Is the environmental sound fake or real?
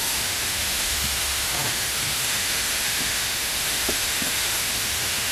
fake